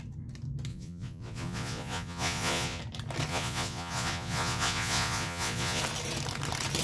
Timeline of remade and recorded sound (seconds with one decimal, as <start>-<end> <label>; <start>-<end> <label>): 0.0-0.7 recorded; 0.7-2.8 remade; 2.8-3.3 recorded; 3.3-5.8 remade; 5.8-6.8 recorded